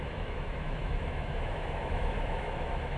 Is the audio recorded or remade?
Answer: remade